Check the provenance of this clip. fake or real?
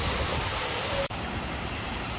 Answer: fake